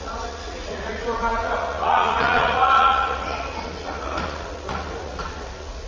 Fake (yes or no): yes